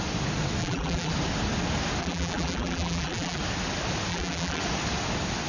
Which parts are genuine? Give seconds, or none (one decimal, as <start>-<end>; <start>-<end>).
0.0-0.6; 1.1-2.0; 3.4-4.1; 4.6-5.5